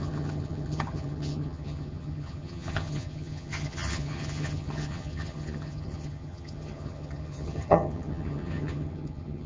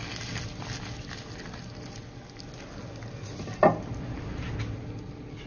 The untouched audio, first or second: second